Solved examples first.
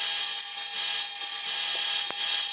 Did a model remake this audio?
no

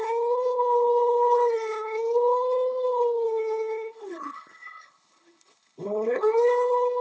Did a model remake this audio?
yes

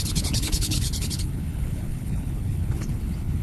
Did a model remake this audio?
yes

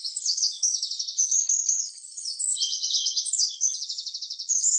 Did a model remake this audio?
yes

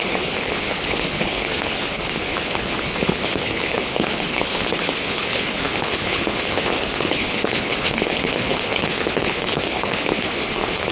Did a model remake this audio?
yes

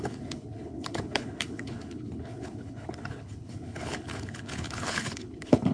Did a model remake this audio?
yes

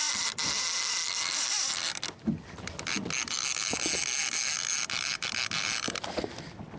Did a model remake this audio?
no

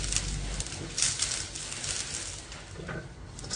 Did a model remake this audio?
no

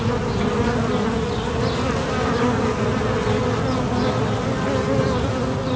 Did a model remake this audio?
no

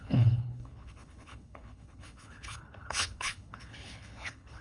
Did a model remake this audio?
yes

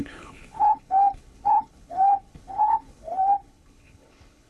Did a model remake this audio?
yes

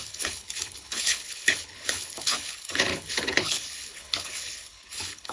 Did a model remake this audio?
yes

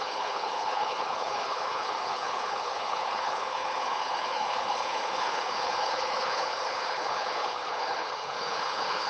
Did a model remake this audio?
yes